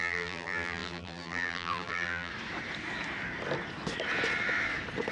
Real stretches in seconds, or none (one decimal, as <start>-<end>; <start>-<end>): 2.3-5.1